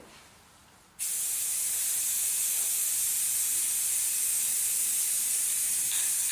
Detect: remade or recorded recorded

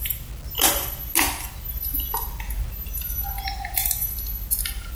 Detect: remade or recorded recorded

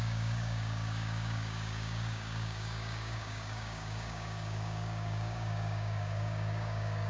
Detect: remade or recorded remade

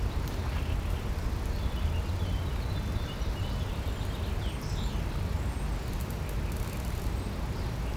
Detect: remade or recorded recorded